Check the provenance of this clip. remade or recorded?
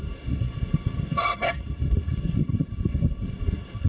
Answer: remade